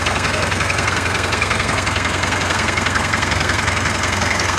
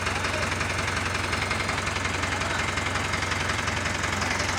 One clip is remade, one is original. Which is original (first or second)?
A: second